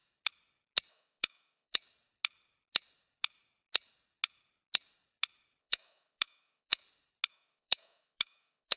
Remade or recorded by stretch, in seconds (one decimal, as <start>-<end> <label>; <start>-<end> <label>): 0.0-0.9 recorded; 0.9-1.8 remade; 1.8-5.6 recorded; 5.6-6.8 remade; 6.8-7.3 recorded; 7.3-8.8 remade